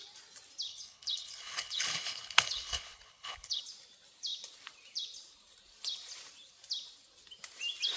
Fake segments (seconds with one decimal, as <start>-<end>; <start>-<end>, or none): 0.7-3.6